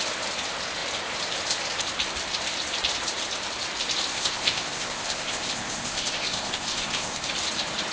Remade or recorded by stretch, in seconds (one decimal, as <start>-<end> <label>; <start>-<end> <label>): 0.0-4.1 recorded; 4.1-7.3 remade; 7.3-7.9 recorded